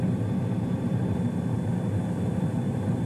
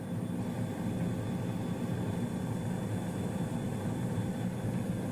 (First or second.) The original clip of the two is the second